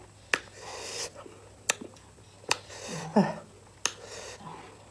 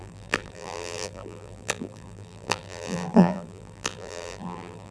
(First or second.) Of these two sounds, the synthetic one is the second